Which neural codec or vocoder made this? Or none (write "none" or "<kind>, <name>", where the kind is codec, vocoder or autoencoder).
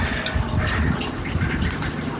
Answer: none